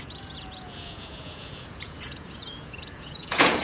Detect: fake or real fake